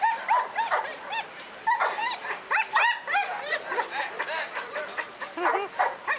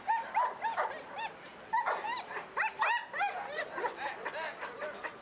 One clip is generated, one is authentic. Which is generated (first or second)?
first